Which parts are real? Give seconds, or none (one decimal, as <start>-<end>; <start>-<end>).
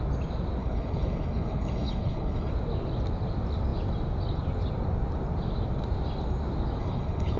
0.0-0.6; 2.5-6.8